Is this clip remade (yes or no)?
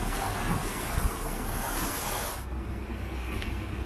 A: yes